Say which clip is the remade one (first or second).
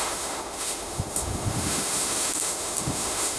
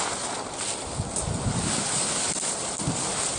first